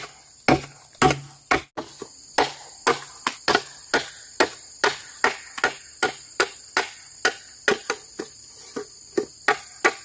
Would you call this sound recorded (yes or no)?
yes